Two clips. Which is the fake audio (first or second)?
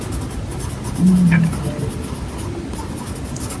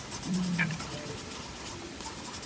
second